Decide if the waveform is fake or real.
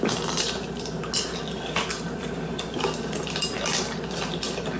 real